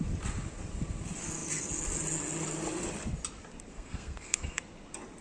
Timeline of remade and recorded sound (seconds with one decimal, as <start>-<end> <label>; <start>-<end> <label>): 0.0-3.7 recorded; 3.7-4.6 remade; 4.6-5.2 recorded